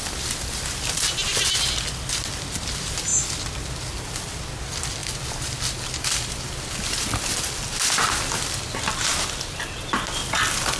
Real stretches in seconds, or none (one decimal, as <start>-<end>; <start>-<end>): 0.0-10.8